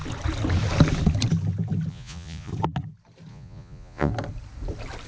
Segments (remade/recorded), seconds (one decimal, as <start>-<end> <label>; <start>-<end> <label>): 0.0-1.9 recorded; 1.9-2.5 remade; 2.5-3.3 recorded; 3.3-4.1 remade; 4.1-5.1 recorded

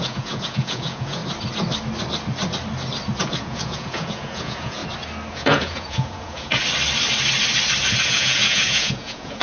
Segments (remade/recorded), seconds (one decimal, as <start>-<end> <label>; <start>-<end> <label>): 0.0-1.2 remade; 1.2-3.2 recorded; 3.2-4.8 remade; 4.8-5.3 recorded; 5.3-6.6 remade; 6.6-8.0 recorded; 8.0-9.4 remade

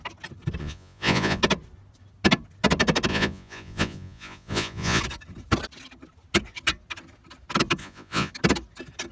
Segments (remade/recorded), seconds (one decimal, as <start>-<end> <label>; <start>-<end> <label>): 0.0-0.6 recorded; 0.6-1.4 remade; 1.4-3.1 recorded; 3.1-5.0 remade; 5.0-7.8 recorded; 7.8-8.3 remade; 8.3-9.1 recorded